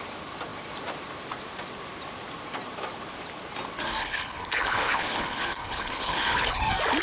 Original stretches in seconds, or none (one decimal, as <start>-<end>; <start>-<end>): 0.0-4.0; 6.6-7.0